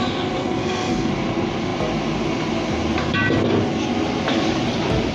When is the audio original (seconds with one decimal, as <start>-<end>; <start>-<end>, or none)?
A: 0.0-0.4; 1.1-5.1